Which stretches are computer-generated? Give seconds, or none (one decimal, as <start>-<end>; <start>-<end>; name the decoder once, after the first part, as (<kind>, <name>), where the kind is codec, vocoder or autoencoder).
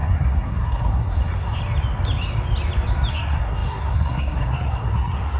0.0-1.6 (codec, SNAC); 3.1-5.4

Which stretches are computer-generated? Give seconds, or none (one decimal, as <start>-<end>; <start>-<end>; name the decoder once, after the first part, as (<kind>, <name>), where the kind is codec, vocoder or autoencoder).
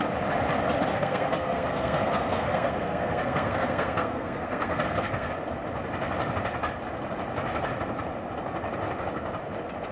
0.9-5.3 (codec, SNAC)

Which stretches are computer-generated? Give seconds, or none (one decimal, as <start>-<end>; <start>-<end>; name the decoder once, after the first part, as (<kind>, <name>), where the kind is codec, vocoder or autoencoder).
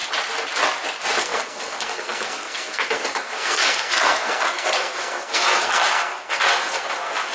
1.2-7.3 (codec, SNAC)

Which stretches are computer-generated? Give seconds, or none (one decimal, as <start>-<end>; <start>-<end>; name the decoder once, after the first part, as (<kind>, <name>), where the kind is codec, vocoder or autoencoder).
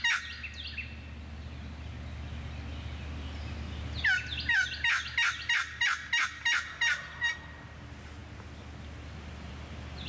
none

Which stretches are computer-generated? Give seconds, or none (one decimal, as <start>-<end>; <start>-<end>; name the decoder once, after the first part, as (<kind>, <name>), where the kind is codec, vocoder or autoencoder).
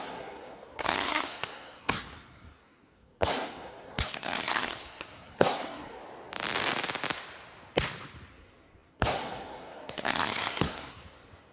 0.0-6.0 (codec, SNAC); 8.3-11.5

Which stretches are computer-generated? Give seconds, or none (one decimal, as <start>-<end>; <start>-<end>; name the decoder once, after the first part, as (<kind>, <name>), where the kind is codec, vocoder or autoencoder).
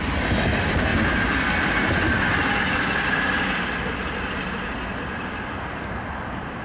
none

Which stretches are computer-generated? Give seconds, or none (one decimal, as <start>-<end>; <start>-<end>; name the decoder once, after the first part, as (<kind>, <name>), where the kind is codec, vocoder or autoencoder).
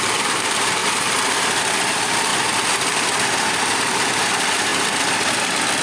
0.0-0.8 (vocoder, BigVGAN v2); 1.6-2.3; 3.5-4.7